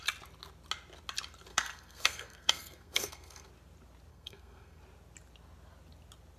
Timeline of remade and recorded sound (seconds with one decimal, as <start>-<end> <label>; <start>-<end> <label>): 0.0-1.5 recorded; 1.5-3.5 remade; 3.5-4.1 recorded; 4.1-4.8 remade; 4.8-6.4 recorded